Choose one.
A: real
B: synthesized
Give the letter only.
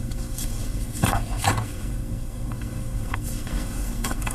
B